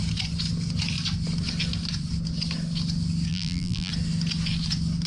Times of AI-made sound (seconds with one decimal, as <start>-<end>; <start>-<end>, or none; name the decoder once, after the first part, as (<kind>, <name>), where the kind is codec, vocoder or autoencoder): 3.3-3.9 (vocoder, BigVGAN v2)